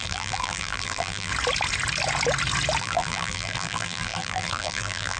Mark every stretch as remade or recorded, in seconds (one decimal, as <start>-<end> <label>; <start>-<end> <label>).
0.0-1.3 remade; 1.3-2.8 recorded; 2.8-5.2 remade